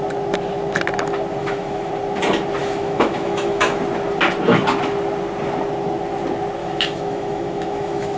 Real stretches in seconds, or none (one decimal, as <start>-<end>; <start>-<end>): 0.0-1.4; 1.9-2.6; 3.8-6.6